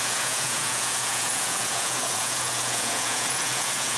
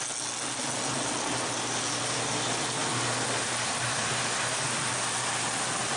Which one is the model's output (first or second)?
first